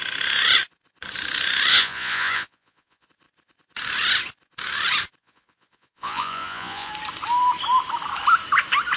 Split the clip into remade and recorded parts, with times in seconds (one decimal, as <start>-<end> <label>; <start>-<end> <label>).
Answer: 0.0-1.7 recorded; 1.7-3.1 remade; 3.1-5.2 recorded; 5.2-6.9 remade; 6.9-9.0 recorded